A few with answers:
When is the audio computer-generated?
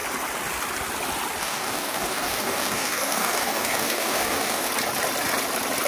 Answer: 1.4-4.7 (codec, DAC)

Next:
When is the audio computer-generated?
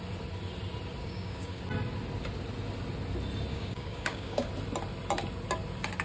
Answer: 1.0-1.6 (codec, DAC); 3.5-4.5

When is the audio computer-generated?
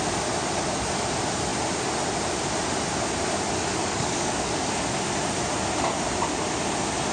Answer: 3.8-4.5 (codec, DAC)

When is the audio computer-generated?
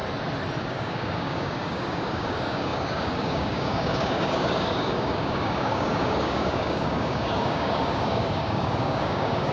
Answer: 0.6-9.5 (codec, DAC)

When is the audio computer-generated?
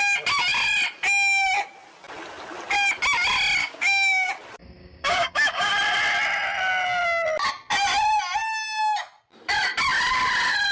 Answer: 3.6-4.3 (codec, DAC); 4.8-5.7